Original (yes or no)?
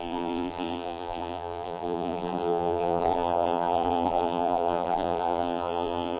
no